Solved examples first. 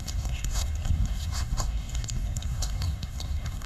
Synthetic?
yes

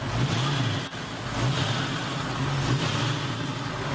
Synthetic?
no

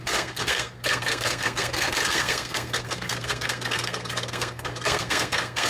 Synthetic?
yes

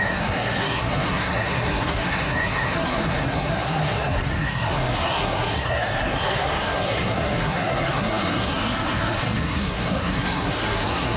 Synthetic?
yes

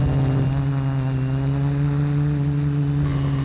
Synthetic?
no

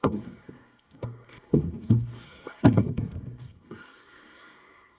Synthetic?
yes